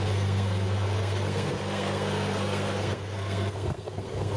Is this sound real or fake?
fake